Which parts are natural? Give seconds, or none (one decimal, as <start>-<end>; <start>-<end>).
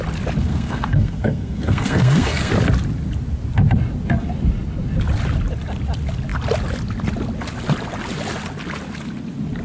0.0-0.4; 2.5-9.6